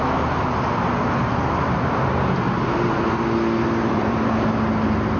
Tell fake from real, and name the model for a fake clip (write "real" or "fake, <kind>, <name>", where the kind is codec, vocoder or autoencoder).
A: real